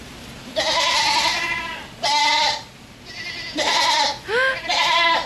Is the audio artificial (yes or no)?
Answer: no